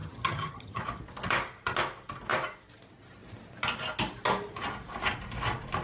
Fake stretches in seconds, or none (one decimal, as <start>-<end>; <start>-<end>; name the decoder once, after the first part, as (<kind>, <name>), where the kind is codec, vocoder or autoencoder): 0.0-0.8 (vocoder, HiFi-GAN)